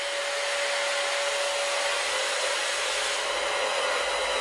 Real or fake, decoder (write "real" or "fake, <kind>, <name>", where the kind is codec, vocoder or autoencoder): real